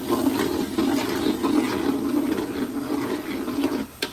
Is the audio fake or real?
real